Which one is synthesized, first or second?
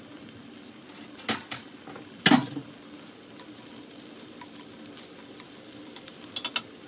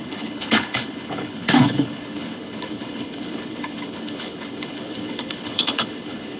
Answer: second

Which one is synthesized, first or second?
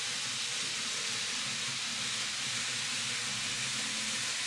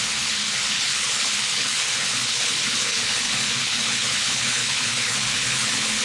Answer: second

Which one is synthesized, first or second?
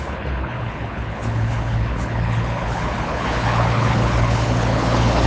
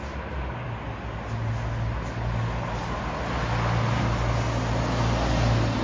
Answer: first